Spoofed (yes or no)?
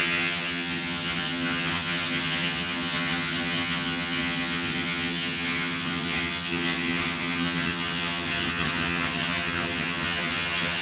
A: yes